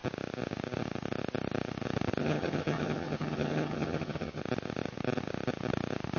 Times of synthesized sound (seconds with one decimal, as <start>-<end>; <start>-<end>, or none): 2.2-4.4